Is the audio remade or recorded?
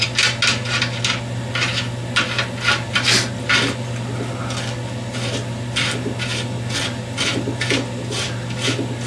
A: recorded